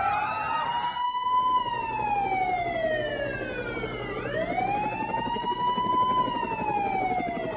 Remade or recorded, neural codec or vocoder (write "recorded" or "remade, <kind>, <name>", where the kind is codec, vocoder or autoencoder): recorded